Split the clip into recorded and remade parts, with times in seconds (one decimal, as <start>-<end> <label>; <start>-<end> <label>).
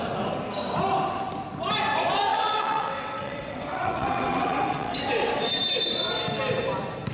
0.0-2.3 recorded; 2.3-5.0 remade; 5.0-7.1 recorded